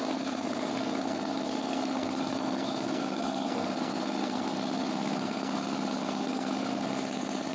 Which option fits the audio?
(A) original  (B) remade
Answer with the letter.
B